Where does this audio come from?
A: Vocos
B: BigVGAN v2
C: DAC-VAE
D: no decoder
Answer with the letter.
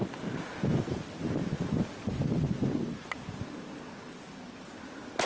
D